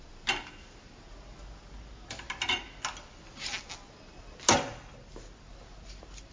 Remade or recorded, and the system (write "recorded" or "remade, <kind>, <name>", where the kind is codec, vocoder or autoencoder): recorded